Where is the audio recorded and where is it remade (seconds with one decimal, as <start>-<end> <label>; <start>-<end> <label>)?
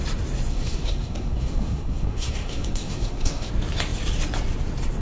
0.0-0.5 recorded; 0.5-3.5 remade; 3.5-5.0 recorded